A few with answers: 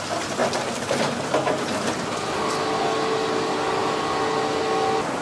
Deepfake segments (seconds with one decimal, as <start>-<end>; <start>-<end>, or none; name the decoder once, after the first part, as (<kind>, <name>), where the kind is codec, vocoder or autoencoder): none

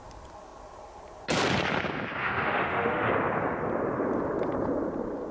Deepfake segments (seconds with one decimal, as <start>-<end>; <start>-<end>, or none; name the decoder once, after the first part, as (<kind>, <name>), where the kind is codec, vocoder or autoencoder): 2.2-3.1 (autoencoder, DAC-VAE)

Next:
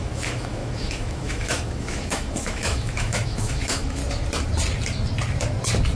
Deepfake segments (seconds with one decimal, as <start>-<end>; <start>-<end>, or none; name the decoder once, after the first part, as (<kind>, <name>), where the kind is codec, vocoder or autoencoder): 0.0-4.0 (autoencoder, DAC-VAE)